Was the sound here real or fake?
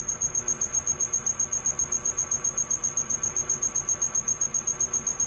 real